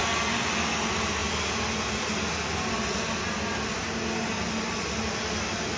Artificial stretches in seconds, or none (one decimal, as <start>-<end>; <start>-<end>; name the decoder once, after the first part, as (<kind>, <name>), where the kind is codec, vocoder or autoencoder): none